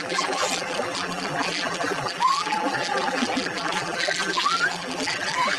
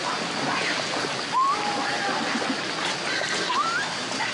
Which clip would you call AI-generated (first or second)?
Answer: first